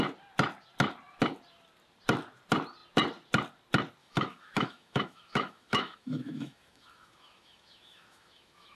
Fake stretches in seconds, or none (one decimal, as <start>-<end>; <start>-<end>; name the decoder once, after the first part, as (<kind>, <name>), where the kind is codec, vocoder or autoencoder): 4.0-8.8 (autoencoder, DAC-VAE)